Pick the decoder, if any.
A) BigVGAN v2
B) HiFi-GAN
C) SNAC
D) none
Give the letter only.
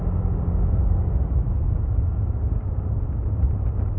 D